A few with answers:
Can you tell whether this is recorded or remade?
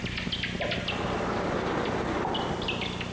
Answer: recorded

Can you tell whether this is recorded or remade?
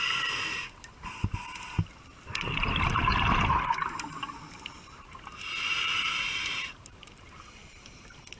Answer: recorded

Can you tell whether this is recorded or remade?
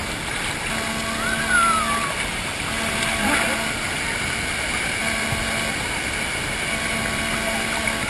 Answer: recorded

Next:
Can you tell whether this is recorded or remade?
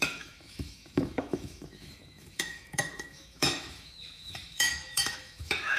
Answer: remade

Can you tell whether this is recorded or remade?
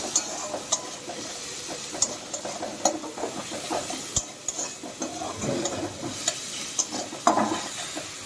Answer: recorded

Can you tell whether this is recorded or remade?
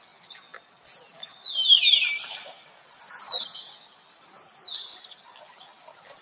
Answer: recorded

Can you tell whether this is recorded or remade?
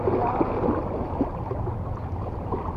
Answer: recorded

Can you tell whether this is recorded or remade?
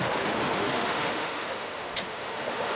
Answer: remade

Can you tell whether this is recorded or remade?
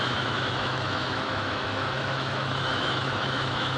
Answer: remade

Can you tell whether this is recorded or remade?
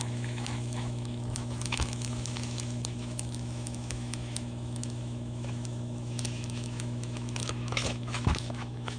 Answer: remade